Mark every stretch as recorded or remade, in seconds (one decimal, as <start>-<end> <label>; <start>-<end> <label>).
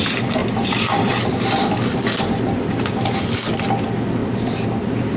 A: 0.0-0.4 recorded; 0.4-1.3 remade; 1.3-5.2 recorded